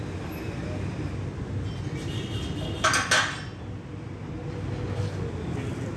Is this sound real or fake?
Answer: real